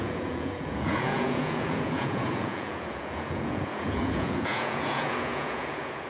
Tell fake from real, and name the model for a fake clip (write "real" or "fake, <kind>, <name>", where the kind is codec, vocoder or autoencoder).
fake, vocoder, Vocos